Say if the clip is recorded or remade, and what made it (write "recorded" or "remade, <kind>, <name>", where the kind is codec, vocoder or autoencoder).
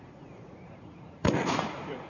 remade, vocoder, Vocos